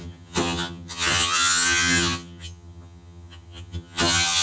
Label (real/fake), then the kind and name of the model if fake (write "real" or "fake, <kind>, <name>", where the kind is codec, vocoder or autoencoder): fake, vocoder, HiFi-GAN